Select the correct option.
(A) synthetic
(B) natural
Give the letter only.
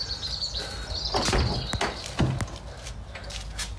B